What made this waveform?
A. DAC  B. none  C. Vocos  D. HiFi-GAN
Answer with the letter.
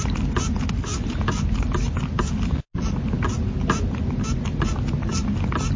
B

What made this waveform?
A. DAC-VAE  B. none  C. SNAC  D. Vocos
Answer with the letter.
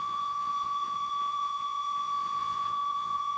D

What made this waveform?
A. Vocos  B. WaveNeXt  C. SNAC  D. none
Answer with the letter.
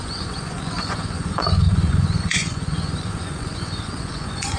A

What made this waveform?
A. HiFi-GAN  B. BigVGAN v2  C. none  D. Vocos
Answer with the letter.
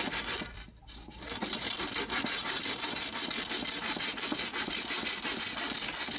C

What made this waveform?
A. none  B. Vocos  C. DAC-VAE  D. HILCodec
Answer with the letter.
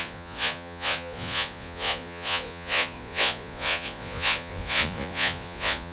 B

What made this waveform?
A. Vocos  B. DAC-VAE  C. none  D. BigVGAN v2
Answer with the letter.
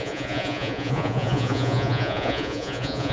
A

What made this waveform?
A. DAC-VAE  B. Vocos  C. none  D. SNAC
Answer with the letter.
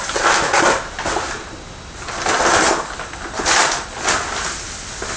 C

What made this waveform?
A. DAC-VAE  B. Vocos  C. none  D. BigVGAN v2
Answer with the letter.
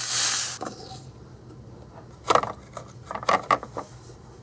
C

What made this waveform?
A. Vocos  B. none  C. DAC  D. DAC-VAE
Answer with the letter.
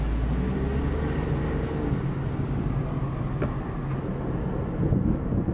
B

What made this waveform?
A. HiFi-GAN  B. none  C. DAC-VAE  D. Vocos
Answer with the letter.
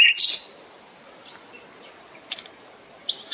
B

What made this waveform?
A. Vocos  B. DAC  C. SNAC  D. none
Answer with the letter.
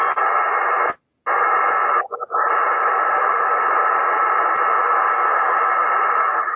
D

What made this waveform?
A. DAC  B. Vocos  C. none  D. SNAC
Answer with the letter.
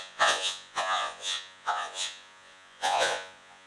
B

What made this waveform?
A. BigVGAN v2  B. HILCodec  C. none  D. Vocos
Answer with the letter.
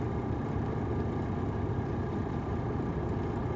C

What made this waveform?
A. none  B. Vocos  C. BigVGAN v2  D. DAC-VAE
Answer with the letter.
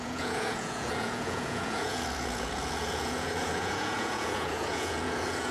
B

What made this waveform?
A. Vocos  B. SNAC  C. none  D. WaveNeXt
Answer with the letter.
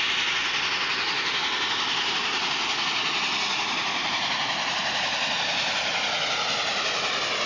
C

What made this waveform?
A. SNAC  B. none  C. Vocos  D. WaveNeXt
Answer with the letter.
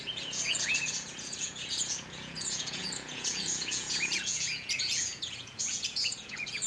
C